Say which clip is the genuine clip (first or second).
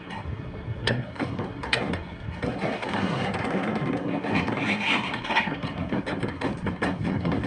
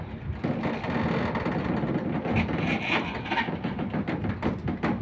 second